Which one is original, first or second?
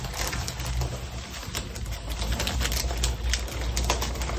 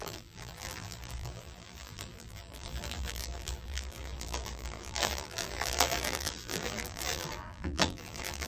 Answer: first